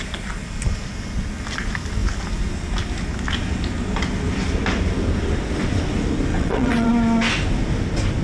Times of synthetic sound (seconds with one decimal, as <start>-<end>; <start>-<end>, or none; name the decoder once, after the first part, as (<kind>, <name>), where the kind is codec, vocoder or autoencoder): 6.3-6.9 (vocoder, WaveNeXt)